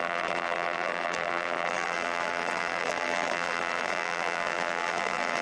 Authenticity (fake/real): fake